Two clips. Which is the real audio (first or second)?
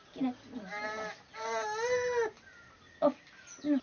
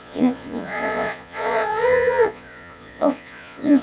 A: first